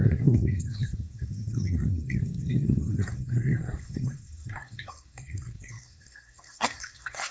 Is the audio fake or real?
fake